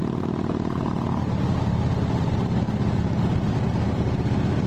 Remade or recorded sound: recorded